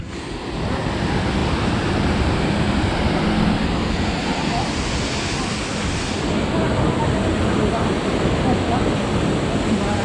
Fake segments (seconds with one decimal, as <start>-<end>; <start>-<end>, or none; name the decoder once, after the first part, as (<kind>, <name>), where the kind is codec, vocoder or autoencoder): none